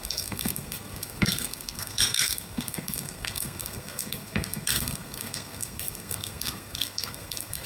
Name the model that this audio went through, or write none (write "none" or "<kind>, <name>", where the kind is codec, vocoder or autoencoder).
codec, SNAC